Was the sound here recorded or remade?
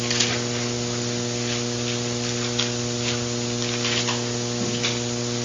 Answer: recorded